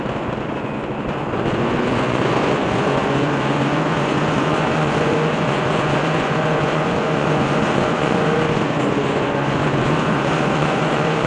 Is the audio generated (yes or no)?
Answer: yes